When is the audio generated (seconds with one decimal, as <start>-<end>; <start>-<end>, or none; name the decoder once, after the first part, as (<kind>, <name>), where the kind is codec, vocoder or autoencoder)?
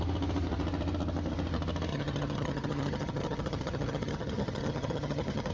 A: 1.9-5.5 (vocoder, HiFi-GAN)